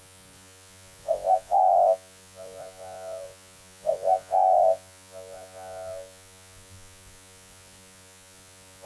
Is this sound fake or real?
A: fake